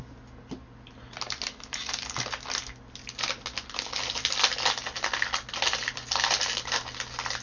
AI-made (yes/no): no